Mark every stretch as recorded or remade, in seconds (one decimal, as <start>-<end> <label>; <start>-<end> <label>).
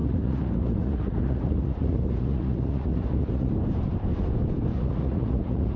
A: 0.0-3.5 remade; 3.5-4.7 recorded; 4.7-5.8 remade